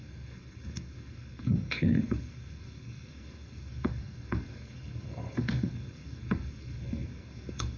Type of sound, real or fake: fake